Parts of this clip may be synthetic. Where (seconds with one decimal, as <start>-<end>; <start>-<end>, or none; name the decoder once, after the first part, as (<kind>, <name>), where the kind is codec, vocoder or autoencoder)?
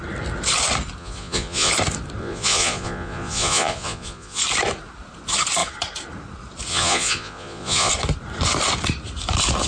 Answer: 1.0-1.7 (vocoder, Vocos); 2.2-4.4; 6.7-7.9